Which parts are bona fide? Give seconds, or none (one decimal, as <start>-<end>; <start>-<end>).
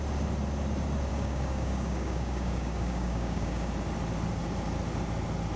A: 0.0-1.1; 3.7-5.6